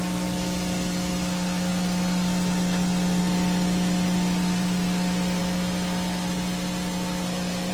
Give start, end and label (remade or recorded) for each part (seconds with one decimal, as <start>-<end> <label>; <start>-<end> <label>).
0.0-7.7 recorded